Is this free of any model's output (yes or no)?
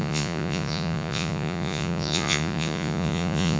no